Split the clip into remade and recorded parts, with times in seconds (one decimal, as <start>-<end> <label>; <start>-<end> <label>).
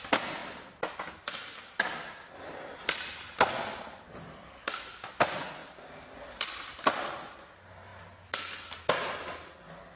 0.0-10.0 recorded